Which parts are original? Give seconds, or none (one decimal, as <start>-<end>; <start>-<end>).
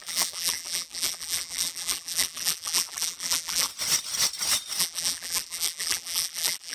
3.7-4.8